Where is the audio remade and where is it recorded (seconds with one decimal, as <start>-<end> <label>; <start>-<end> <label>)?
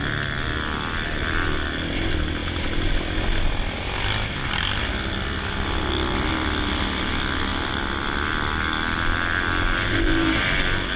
0.0-11.0 recorded